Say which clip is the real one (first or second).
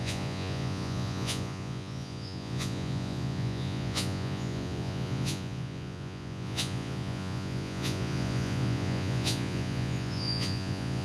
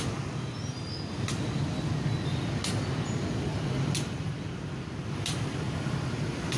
second